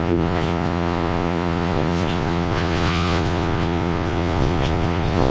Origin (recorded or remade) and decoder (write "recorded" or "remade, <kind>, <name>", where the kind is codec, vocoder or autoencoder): remade, vocoder, Vocos